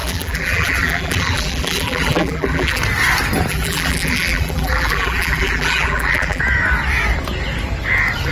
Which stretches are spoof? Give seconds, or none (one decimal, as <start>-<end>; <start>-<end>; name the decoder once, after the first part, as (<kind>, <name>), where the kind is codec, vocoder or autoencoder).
0.0-2.8 (vocoder, BigVGAN v2); 3.5-6.4